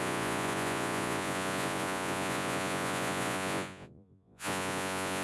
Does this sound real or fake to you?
fake